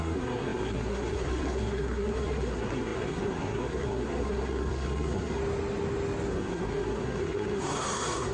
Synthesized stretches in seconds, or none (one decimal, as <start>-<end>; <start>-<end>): 0.0-5.4; 6.3-8.3